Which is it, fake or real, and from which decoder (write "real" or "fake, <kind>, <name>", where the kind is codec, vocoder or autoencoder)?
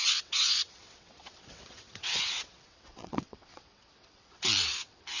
fake, vocoder, WaveNeXt